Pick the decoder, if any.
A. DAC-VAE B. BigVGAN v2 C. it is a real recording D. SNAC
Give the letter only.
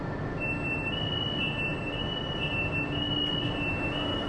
C